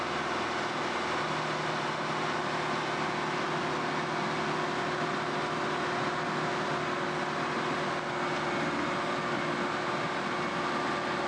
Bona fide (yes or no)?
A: yes